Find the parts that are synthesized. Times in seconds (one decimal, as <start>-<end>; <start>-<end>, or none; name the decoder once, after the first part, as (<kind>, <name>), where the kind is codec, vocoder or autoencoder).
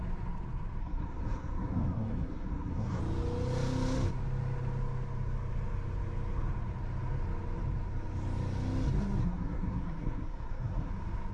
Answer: 0.8-3.0 (codec, SNAC); 9.2-10.9